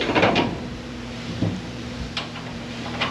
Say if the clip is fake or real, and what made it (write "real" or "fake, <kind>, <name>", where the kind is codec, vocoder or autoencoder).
fake, vocoder, BigVGAN v2